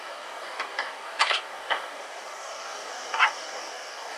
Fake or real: fake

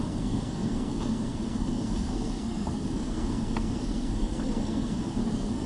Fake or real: fake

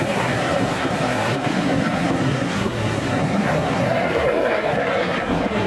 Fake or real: fake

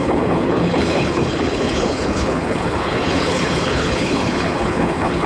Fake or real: fake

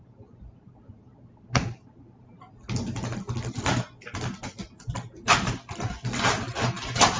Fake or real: real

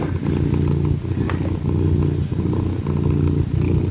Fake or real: real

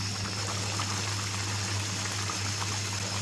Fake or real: real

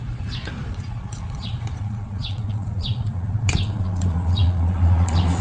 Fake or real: fake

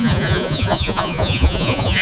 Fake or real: fake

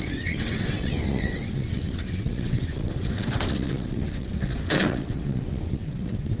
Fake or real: fake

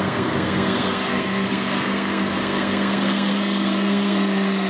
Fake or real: fake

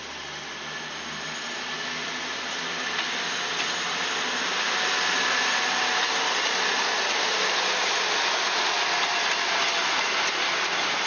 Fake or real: real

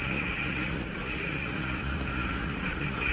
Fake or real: fake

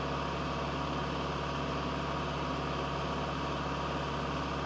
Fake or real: real